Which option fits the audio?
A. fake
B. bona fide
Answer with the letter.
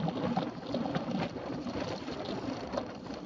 B